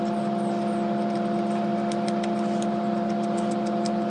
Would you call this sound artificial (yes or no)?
no